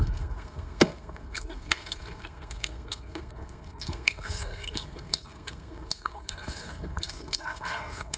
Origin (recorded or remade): remade